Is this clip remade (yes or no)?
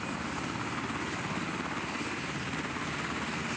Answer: no